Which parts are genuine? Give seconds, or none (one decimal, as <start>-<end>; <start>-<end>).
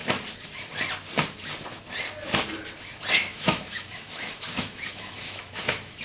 0.0-3.2